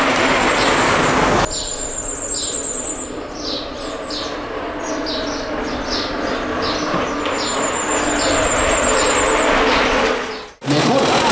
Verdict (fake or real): real